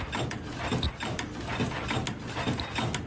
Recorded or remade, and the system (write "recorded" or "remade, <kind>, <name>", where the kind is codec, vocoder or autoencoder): recorded